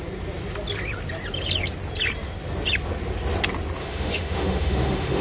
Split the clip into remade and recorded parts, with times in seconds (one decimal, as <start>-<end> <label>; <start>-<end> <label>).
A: 0.0-3.8 recorded; 3.8-5.2 remade